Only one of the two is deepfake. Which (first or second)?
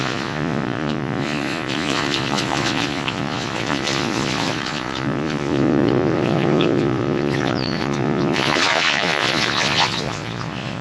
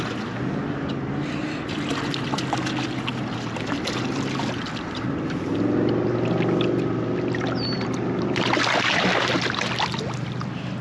first